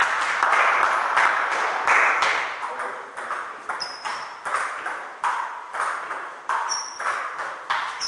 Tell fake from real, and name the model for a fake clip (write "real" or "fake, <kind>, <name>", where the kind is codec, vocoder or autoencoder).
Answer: real